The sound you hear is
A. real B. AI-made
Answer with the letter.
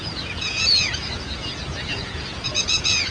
B